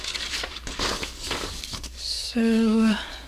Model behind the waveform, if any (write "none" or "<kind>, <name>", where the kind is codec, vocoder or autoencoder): codec, DAC